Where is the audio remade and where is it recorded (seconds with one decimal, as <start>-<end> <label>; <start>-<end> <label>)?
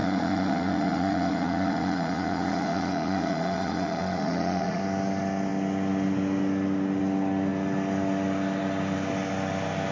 0.0-4.8 remade; 4.8-9.9 recorded